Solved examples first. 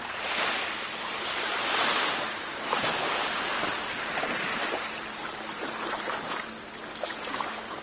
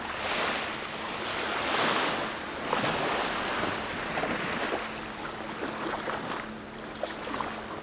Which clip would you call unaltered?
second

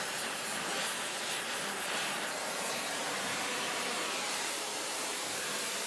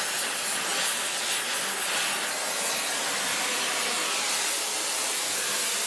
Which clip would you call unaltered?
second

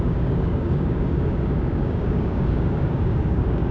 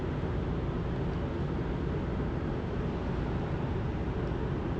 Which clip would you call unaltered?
second